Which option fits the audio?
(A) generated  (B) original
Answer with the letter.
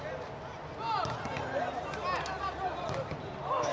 B